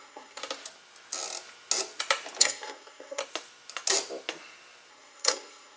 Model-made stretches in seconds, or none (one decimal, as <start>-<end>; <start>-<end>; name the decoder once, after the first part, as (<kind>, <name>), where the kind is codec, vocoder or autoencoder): 0.0-0.4 (codec, SNAC); 2.4-3.2; 4.9-5.8